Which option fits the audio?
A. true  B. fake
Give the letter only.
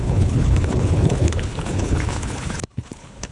B